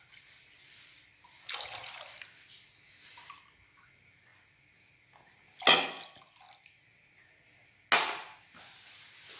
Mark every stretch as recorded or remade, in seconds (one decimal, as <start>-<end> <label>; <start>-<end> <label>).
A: 0.0-9.4 recorded